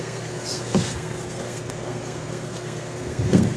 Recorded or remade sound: remade